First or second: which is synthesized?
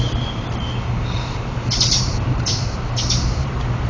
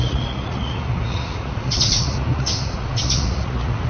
second